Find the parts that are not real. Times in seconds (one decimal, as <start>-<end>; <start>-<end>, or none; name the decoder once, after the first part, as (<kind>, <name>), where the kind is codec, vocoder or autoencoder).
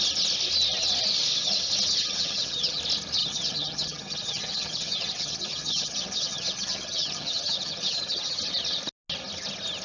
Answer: 2.0-2.8 (vocoder, HiFi-GAN); 3.2-8.4